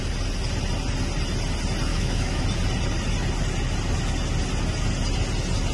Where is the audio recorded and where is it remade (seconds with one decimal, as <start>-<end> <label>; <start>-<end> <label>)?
0.0-1.9 recorded; 1.9-2.4 remade; 2.4-5.7 recorded